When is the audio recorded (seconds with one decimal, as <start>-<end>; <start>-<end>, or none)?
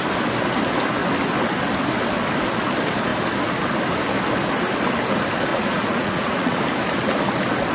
0.0-5.5; 6.6-7.7